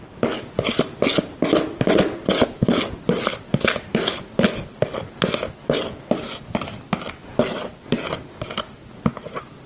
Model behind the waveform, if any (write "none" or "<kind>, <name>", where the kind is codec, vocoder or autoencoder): none